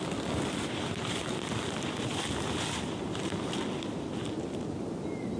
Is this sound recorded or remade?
recorded